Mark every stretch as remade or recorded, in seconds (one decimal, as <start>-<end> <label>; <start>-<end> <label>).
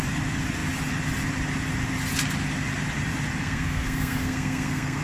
0.0-3.4 recorded; 3.4-5.0 remade